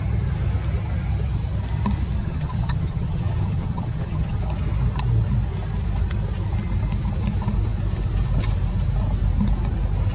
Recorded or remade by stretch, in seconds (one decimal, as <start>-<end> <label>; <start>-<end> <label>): 0.0-2.2 recorded; 2.2-4.4 remade; 4.4-10.1 recorded